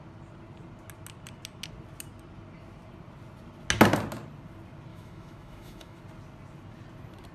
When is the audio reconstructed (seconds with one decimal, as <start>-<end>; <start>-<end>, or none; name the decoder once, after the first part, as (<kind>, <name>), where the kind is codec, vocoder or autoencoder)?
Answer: 4.9-6.0 (autoencoder, DAC-VAE)